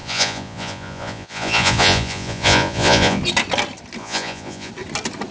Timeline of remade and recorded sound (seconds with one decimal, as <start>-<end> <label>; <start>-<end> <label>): 0.0-3.2 remade; 3.2-4.0 recorded; 4.0-4.7 remade; 4.7-5.3 recorded